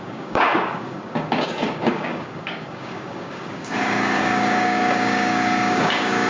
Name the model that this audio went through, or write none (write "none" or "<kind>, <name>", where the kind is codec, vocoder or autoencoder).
codec, DAC